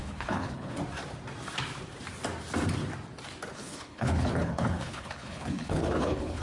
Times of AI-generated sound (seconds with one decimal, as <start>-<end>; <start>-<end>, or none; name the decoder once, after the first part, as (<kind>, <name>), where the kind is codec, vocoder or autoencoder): 0.0-0.8 (codec, HILCodec); 3.5-6.4